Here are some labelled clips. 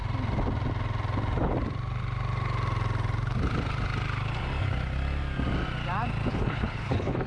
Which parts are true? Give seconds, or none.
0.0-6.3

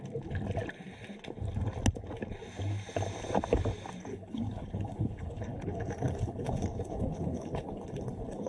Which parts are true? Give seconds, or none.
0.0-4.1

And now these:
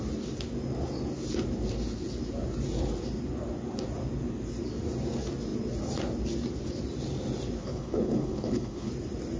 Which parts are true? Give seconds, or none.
0.0-7.6; 8.9-9.4

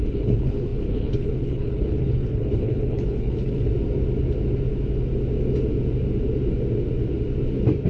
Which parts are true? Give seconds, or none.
3.7-7.9

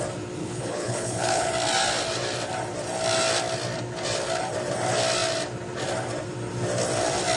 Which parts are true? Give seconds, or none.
0.0-0.4; 1.5-7.4

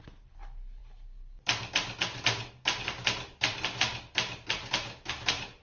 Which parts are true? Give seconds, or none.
0.0-5.6

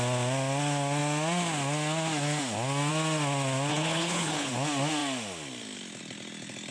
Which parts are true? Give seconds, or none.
0.0-3.7; 4.5-6.7